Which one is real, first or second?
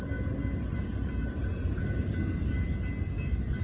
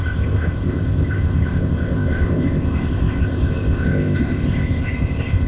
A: first